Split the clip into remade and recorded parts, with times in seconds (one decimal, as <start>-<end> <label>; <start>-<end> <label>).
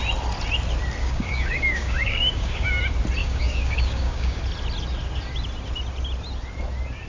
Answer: 0.0-1.0 recorded; 1.0-2.8 remade; 2.8-3.2 recorded; 3.2-4.4 remade; 4.4-7.1 recorded